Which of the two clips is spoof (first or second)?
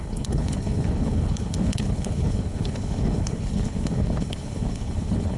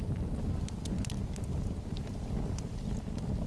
first